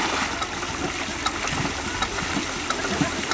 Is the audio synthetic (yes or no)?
no